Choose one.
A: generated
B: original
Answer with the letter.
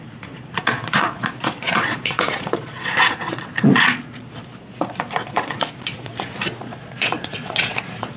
A